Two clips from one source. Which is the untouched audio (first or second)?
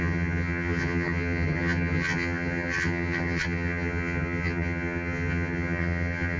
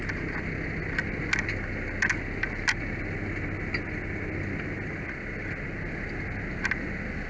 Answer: second